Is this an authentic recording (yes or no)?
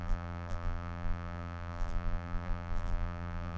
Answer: no